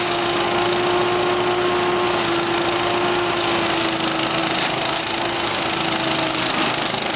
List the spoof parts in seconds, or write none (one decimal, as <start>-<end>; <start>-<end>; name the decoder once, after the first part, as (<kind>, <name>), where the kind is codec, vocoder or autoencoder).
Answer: none